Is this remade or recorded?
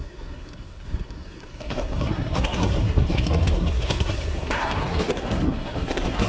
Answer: remade